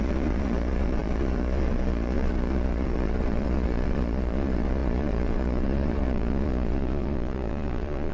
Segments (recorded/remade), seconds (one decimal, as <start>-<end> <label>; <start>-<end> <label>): 0.0-8.1 remade